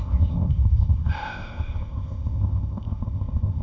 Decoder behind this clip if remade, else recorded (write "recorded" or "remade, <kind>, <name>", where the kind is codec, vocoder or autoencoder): remade, codec, ZipCodec